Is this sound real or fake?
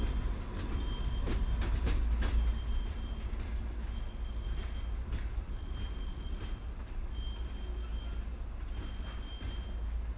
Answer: real